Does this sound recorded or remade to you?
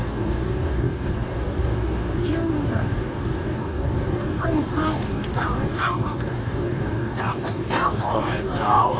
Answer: remade